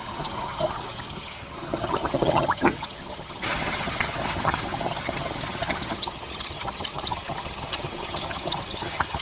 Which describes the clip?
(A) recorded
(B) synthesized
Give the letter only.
B